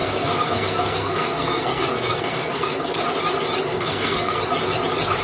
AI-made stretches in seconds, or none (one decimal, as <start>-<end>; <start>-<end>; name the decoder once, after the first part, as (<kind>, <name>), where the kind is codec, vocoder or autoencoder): 0.0-3.0 (codec, SNAC); 3.7-4.4